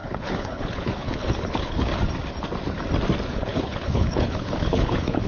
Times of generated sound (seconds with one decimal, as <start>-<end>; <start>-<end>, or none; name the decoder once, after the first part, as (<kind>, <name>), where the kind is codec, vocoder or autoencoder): 0.0-1.9 (codec, HILCodec); 3.3-5.3